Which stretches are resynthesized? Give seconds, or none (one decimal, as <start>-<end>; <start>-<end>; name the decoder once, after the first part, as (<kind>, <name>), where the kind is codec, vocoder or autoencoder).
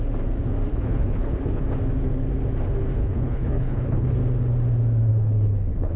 0.7-1.6 (codec, HILCodec); 3.0-4.1; 5.1-6.0